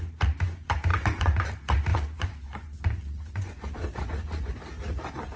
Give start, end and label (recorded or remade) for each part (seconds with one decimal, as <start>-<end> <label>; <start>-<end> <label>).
0.0-0.9 recorded; 0.9-1.4 remade; 1.4-1.9 recorded; 1.9-4.5 remade; 4.5-5.4 recorded